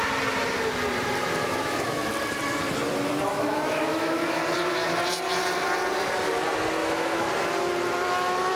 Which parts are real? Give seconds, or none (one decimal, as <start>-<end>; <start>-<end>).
0.0-1.4; 2.1-3.3; 4.4-6.8; 7.3-8.6